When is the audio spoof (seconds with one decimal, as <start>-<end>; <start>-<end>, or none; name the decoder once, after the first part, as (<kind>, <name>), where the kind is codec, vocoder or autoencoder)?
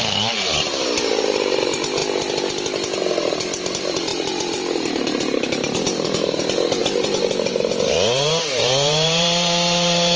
0.0-2.0 (vocoder, BigVGAN v2); 3.1-10.2